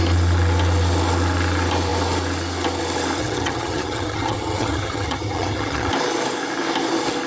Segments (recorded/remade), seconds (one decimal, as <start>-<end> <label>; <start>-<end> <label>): 0.0-3.2 recorded; 3.2-5.9 remade; 5.9-7.3 recorded